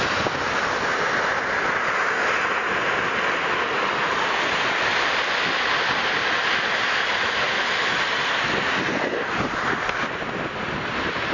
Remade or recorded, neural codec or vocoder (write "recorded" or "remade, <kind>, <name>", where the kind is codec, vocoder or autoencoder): recorded